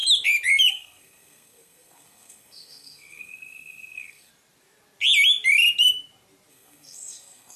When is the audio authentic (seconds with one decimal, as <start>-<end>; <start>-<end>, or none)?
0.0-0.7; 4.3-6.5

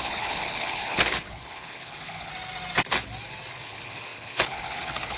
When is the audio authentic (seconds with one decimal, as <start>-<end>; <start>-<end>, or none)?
2.3-3.5

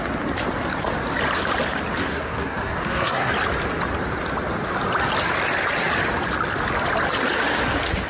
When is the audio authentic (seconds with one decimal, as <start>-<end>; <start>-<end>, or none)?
0.0-2.0; 3.3-8.1